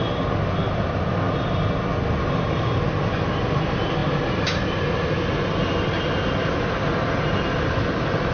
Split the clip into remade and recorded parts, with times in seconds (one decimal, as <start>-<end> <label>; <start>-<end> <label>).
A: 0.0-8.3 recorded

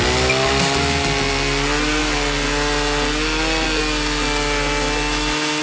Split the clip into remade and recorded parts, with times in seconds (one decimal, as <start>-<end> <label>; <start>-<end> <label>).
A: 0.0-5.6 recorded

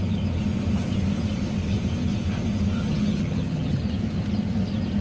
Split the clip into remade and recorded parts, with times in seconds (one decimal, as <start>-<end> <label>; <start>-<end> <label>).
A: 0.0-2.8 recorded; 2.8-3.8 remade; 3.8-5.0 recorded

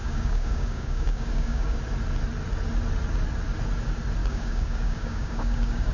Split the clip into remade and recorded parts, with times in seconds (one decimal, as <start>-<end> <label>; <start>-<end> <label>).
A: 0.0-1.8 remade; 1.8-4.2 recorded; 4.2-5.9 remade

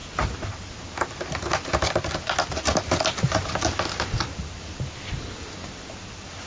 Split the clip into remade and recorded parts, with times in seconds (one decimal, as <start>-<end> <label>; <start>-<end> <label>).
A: 0.0-6.5 recorded